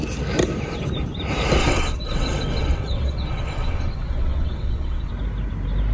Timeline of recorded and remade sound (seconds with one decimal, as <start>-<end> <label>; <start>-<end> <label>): 0.0-1.6 recorded; 1.6-5.1 remade; 5.1-5.9 recorded